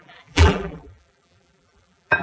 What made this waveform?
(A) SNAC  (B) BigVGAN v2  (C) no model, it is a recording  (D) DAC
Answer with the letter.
B